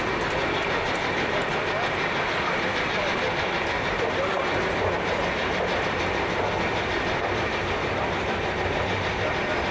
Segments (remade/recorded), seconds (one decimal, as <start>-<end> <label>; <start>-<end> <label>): 0.0-9.7 recorded